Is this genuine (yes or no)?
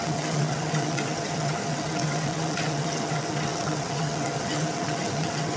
no